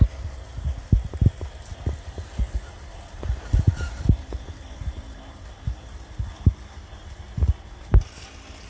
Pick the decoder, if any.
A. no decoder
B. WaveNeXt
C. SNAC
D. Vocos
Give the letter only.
A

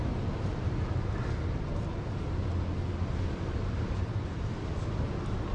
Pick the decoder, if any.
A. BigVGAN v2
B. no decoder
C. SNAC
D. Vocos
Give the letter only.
B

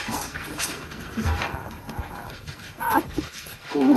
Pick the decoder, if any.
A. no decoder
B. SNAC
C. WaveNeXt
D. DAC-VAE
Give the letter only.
B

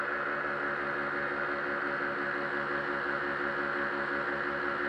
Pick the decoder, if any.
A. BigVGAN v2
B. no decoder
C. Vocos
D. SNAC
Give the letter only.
B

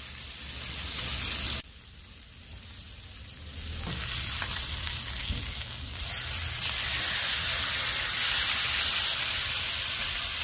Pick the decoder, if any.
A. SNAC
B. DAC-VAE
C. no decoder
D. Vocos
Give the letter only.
C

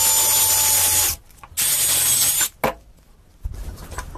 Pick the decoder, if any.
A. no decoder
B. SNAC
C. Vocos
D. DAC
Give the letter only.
A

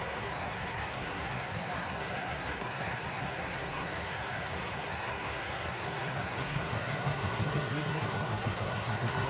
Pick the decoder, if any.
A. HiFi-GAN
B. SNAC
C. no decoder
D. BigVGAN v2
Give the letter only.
B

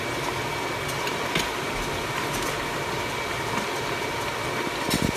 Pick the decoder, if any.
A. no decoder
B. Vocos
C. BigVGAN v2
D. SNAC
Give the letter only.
A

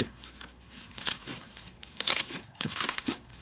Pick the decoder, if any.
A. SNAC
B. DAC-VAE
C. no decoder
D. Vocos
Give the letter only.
A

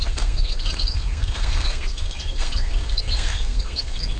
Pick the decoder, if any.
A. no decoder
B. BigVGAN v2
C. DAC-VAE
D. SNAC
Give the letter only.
D